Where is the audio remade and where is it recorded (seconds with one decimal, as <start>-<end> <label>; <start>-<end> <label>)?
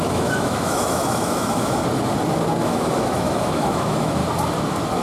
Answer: 0.0-1.8 remade; 1.8-2.6 recorded; 2.6-4.2 remade; 4.2-5.0 recorded